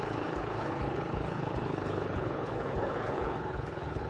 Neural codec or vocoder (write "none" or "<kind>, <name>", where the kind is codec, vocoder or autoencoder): codec, HILCodec